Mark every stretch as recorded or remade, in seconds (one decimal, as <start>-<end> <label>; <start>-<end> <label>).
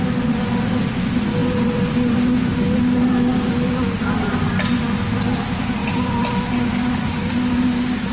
0.0-8.1 recorded